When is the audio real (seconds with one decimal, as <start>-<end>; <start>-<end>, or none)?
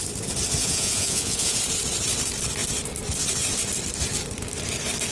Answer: 0.0-0.6; 1.6-5.1